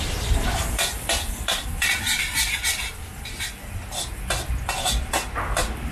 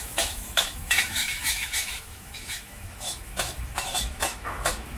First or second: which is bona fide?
first